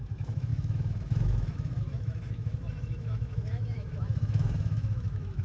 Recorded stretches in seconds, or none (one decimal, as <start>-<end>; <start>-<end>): none

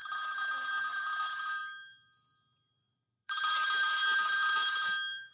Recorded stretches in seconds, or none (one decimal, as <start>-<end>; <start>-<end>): 0.0-0.9; 1.6-2.7; 4.0-5.3